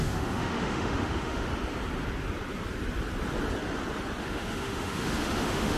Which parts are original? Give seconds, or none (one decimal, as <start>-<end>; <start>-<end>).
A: 1.5-4.2